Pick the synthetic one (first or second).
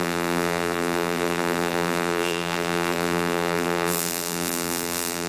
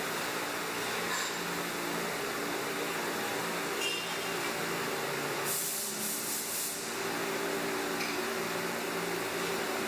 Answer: first